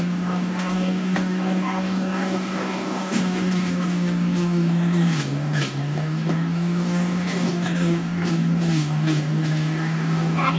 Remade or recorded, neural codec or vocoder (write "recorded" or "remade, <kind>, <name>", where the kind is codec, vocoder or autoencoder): remade, codec, DAC